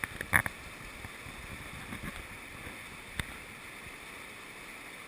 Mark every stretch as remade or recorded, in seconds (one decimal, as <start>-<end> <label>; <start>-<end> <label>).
0.0-5.1 recorded